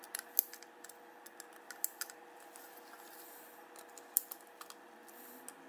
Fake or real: real